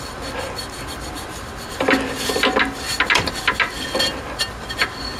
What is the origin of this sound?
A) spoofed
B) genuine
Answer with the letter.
B